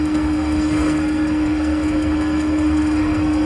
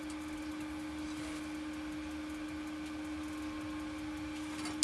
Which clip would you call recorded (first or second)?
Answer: second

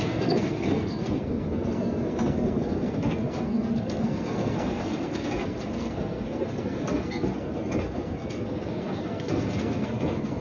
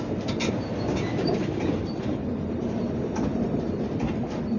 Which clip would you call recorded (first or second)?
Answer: second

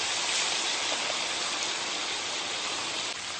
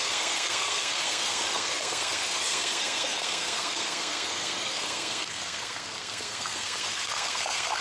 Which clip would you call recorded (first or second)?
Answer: first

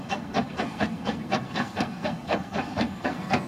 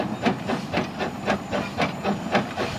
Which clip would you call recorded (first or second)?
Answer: second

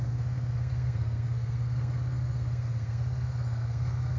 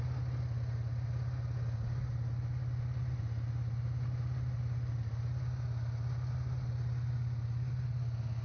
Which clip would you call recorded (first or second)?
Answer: second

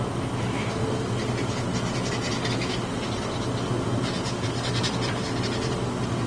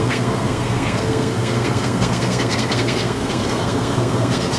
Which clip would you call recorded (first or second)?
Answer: first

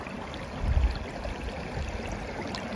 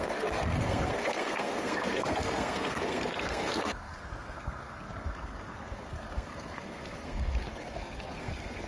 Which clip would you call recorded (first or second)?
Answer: first